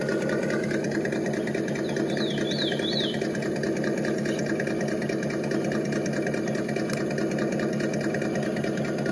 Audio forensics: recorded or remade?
recorded